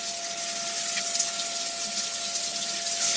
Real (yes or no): yes